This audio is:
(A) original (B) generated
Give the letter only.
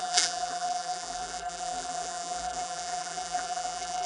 B